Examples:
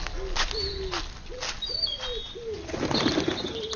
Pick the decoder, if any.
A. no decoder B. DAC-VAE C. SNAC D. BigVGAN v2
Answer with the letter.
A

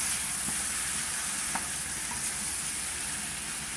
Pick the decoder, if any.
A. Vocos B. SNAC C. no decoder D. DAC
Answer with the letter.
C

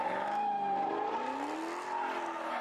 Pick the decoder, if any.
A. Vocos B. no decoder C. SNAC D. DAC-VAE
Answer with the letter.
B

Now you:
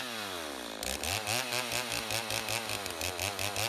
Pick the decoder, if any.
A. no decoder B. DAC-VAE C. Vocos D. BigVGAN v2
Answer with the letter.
A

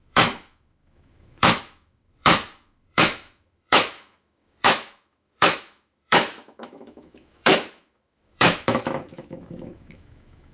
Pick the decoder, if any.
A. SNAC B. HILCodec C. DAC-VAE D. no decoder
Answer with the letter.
C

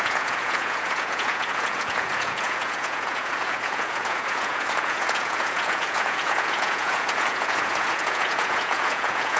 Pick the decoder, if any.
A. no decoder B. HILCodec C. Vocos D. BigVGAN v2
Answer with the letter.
C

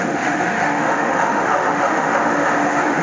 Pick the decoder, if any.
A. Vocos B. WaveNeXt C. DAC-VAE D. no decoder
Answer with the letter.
C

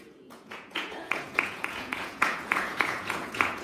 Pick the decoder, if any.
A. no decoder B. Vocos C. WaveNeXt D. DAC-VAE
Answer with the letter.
B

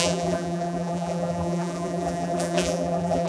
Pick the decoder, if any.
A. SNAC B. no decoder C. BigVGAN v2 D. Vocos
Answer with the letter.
C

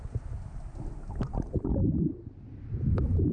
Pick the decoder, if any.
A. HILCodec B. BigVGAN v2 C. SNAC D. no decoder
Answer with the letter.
D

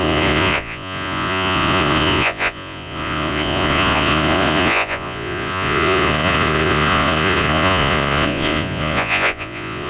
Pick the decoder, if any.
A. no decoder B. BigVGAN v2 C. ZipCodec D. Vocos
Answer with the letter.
D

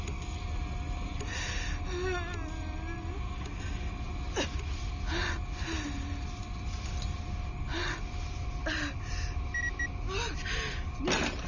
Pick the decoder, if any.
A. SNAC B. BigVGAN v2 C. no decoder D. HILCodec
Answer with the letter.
C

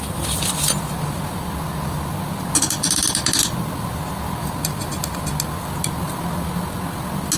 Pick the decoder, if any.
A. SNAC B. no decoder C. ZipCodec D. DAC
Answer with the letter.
B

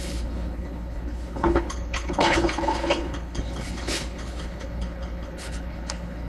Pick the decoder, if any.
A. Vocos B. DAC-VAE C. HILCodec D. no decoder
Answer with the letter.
C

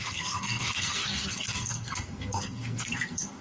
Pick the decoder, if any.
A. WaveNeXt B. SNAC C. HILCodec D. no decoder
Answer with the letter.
B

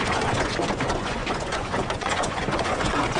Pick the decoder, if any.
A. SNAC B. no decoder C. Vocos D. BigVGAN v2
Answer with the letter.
C